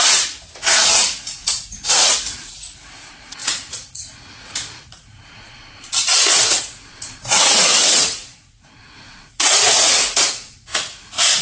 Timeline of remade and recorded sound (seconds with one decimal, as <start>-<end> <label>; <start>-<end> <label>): 0.0-5.6 remade; 5.6-6.4 recorded; 6.4-11.4 remade